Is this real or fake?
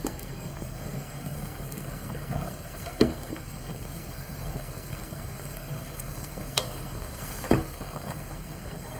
fake